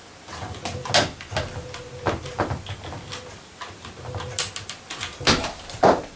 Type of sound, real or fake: real